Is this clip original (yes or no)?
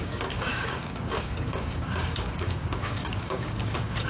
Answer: no